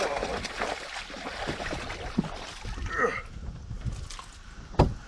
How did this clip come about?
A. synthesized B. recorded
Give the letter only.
B